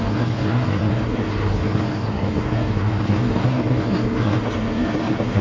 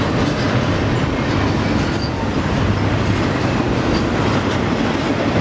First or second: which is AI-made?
first